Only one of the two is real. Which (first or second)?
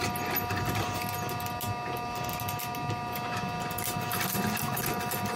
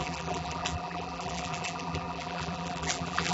first